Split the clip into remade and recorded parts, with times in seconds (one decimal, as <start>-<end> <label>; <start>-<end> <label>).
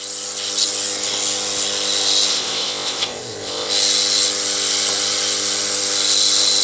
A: 0.0-2.3 recorded; 2.3-3.7 remade; 3.7-6.6 recorded